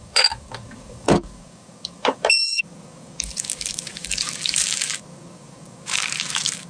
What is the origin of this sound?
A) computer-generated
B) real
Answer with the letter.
A